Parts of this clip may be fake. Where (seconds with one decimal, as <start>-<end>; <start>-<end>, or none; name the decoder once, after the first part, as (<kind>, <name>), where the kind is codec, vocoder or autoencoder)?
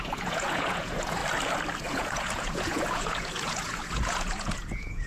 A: 0.0-1.2 (vocoder, Vocos); 1.9-5.1